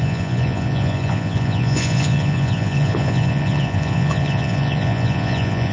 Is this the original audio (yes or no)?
no